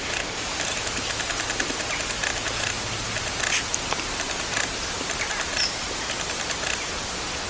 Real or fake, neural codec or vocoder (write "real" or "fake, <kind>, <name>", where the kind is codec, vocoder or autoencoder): real